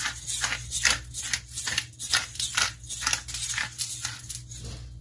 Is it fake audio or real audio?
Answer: real